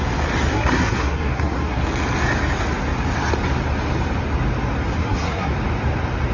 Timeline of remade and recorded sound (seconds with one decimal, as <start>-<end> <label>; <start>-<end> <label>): 0.0-0.5 recorded; 0.5-1.8 remade; 1.8-5.0 recorded; 5.0-5.5 remade; 5.5-6.3 recorded

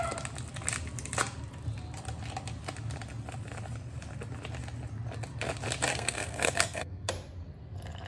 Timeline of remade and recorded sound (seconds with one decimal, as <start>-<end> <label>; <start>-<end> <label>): 0.0-5.9 recorded; 5.9-7.1 remade; 7.1-8.1 recorded

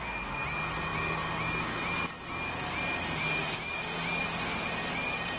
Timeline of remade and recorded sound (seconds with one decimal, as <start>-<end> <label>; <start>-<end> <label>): 0.0-5.4 recorded

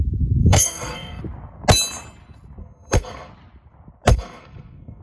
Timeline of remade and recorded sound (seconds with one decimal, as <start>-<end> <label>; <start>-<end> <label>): 0.0-0.4 recorded; 0.4-1.2 remade; 1.2-2.6 recorded; 2.6-3.3 remade; 3.3-4.1 recorded; 4.1-5.0 remade

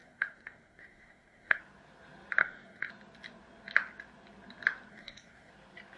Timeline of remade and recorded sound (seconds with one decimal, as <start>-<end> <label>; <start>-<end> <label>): 0.0-1.6 remade; 1.6-2.4 recorded; 2.4-2.9 remade; 2.9-4.9 recorded; 4.9-5.5 remade; 5.5-6.0 recorded

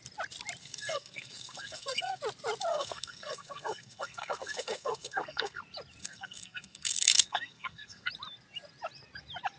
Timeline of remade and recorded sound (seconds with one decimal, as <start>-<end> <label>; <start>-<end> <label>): 0.0-0.6 recorded; 0.6-2.2 remade; 2.2-2.7 recorded; 2.7-5.6 remade; 5.6-6.0 recorded; 6.0-8.1 remade; 8.1-9.6 recorded